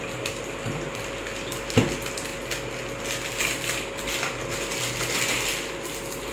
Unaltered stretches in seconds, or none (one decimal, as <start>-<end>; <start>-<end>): 0.0-6.3